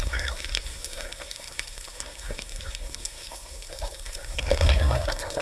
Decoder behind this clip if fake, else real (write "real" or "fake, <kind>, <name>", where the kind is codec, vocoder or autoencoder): fake, codec, SNAC